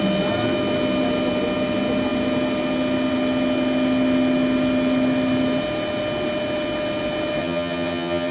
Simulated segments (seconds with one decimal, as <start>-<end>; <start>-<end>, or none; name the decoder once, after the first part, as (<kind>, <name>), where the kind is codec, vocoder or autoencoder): 7.4-8.3 (vocoder, HiFi-GAN)